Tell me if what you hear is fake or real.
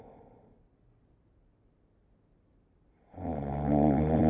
real